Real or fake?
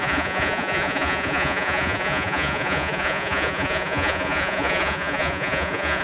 fake